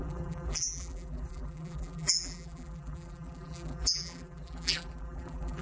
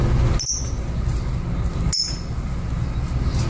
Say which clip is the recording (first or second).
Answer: second